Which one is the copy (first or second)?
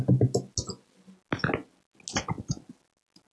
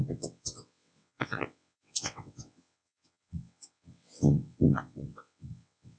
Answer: second